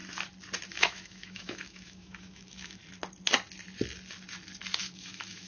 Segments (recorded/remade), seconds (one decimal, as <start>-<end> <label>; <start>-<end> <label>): 0.0-0.7 recorded; 0.7-2.8 remade; 2.8-4.8 recorded; 4.8-5.5 remade